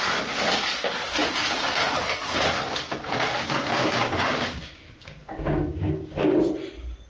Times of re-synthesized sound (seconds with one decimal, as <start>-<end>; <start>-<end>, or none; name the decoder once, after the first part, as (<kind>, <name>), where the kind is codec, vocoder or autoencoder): 3.7-6.4 (codec, DAC)

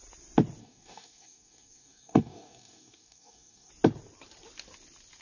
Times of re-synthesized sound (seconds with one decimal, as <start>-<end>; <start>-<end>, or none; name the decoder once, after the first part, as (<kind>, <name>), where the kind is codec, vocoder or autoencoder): 0.6-3.7 (codec, DAC)

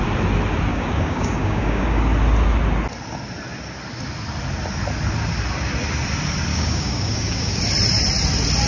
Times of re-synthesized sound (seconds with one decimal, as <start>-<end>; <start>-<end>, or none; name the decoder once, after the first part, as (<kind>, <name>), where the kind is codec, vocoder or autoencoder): 0.7-2.0 (codec, DAC); 6.5-7.6

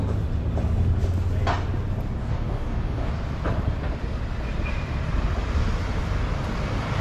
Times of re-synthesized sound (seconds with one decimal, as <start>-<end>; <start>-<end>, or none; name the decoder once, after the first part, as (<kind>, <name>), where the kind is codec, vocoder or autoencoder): 2.2-3.1 (codec, DAC)

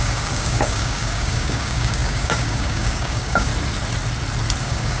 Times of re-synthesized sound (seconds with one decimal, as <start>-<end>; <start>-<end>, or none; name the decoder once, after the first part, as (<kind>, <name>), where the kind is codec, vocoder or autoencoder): 0.0-3.5 (codec, DAC); 4.6-5.0